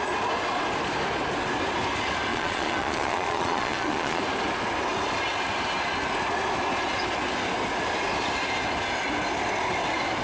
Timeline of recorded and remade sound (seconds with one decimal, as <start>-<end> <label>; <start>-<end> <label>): 0.0-2.3 recorded; 2.3-4.2 remade; 4.2-10.2 recorded